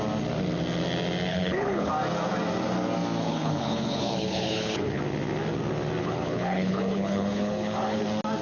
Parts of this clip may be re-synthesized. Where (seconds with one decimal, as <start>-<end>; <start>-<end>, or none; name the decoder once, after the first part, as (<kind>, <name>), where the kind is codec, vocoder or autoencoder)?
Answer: 1.3-1.9 (codec, HILCodec); 3.2-5.0; 6.0-8.0